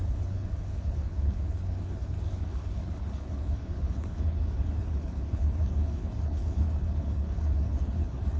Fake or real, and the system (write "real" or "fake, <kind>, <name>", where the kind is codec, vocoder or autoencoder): fake, codec, HILCodec